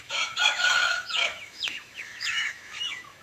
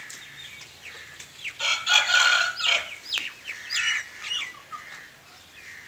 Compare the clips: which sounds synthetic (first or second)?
first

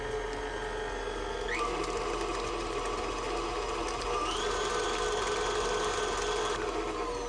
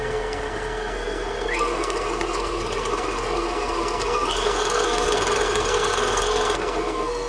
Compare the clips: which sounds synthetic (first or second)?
second